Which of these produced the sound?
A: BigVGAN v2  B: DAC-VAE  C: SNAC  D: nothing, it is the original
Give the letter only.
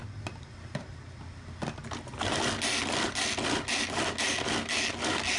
D